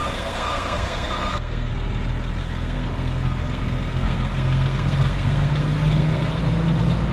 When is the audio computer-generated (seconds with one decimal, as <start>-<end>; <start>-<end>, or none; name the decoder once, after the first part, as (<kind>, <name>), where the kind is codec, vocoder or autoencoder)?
0.0-1.7 (codec, SNAC); 2.4-6.4